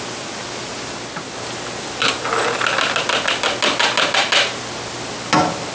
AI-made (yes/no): no